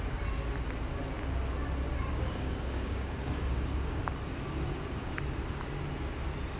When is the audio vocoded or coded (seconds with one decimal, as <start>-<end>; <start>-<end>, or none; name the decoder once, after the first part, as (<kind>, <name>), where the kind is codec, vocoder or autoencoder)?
2.1-4.0 (codec, DAC)